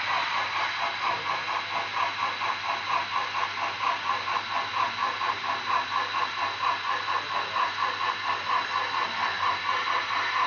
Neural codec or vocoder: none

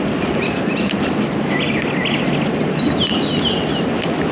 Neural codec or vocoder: none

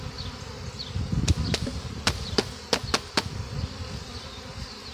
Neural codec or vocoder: none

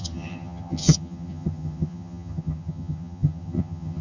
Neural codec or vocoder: vocoder, HiFi-GAN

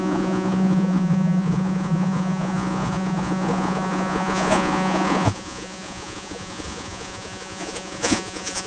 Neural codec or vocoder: vocoder, Vocos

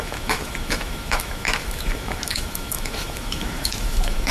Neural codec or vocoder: autoencoder, DAC-VAE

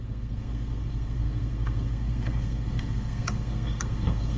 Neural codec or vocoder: codec, SNAC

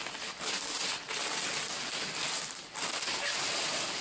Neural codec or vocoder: none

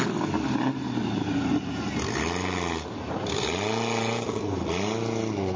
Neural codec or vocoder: none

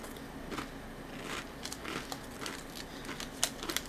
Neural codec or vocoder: none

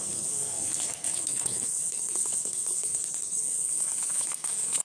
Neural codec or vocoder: codec, SNAC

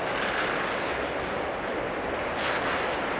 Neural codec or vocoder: none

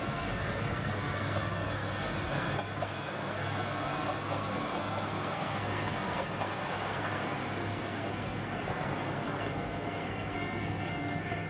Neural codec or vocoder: codec, SNAC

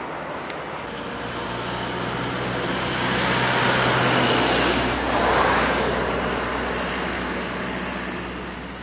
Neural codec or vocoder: none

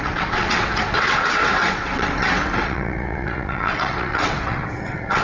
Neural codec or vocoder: vocoder, WaveNeXt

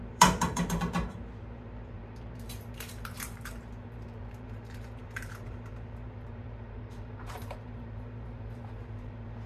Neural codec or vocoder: vocoder, BigVGAN v2